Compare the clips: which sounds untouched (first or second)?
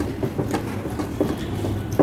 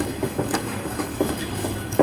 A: first